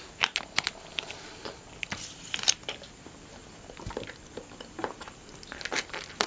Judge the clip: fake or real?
real